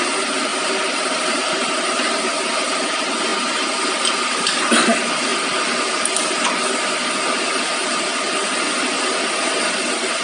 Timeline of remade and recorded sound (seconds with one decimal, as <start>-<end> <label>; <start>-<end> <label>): 0.0-0.5 recorded; 0.5-2.4 remade; 2.4-10.2 recorded